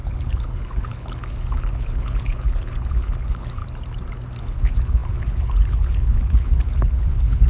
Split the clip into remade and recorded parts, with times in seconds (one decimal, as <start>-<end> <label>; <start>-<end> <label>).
0.0-3.6 remade; 3.6-4.4 recorded; 4.4-7.5 remade